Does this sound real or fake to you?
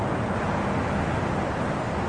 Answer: real